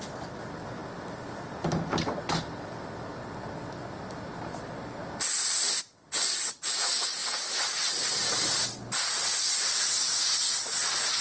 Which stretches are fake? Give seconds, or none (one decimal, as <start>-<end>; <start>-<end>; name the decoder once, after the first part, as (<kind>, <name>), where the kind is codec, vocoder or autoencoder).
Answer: none